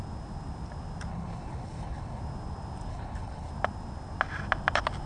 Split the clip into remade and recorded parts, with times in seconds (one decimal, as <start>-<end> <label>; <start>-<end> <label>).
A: 0.0-1.1 recorded; 1.1-2.2 remade; 2.2-2.9 recorded; 2.9-3.5 remade; 3.5-5.1 recorded